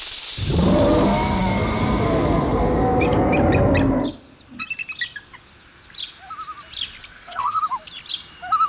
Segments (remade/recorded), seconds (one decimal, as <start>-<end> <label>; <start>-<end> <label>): 0.0-7.1 recorded; 7.1-7.6 remade; 7.6-8.7 recorded